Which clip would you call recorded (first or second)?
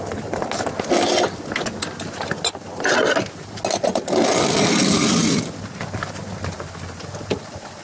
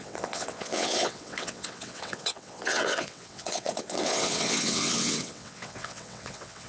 first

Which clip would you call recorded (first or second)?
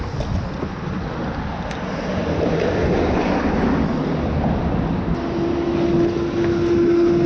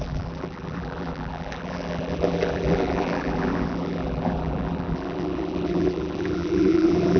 first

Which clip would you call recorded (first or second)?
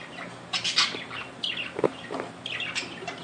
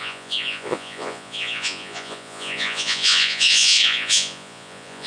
first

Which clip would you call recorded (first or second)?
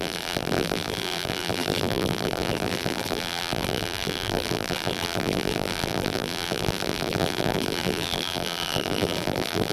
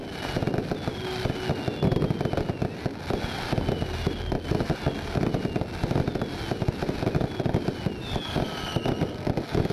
second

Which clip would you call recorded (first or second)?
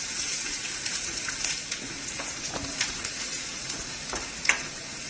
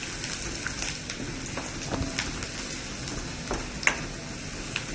second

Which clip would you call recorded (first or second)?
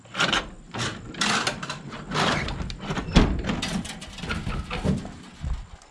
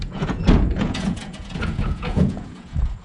first